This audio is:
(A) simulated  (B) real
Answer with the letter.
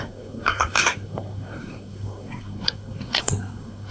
A